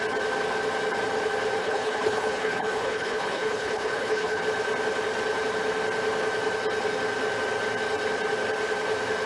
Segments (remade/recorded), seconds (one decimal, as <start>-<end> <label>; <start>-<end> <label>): 0.0-1.6 recorded; 1.6-4.4 remade; 4.4-9.3 recorded